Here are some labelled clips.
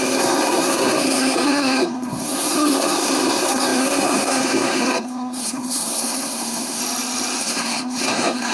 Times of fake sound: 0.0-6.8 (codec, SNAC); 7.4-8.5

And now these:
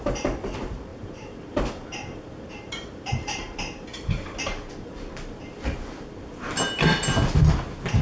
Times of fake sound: 0.9-5.1 (vocoder, BigVGAN v2)

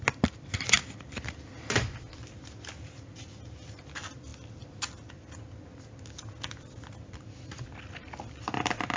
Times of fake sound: none